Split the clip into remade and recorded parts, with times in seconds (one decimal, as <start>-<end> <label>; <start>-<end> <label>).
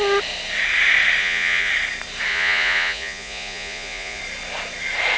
0.0-1.2 recorded; 1.2-1.7 remade; 1.7-2.3 recorded; 2.3-4.2 remade; 4.2-5.2 recorded